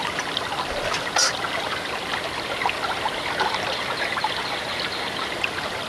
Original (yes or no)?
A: yes